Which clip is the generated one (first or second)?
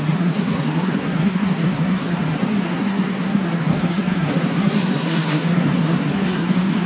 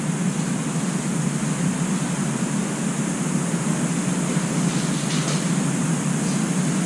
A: first